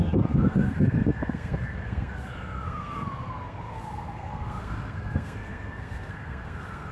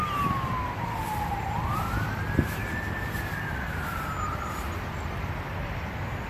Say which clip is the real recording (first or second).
second